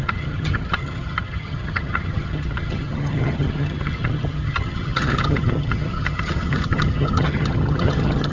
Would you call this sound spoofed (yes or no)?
yes